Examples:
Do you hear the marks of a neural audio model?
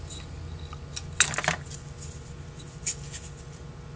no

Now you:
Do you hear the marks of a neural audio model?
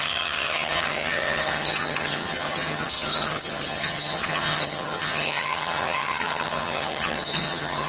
yes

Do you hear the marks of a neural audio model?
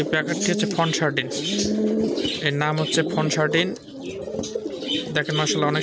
no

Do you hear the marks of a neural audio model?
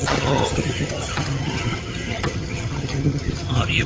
yes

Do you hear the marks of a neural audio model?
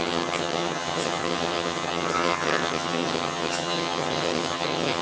yes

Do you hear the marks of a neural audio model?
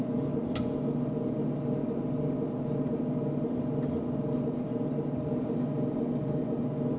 no